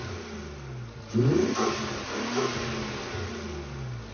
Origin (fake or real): real